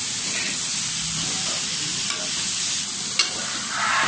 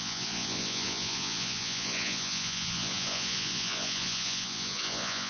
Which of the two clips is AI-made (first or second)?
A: second